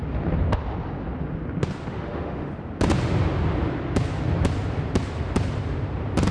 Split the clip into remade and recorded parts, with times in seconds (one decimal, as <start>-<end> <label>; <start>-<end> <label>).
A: 0.0-1.9 recorded; 1.9-2.5 remade; 2.5-6.3 recorded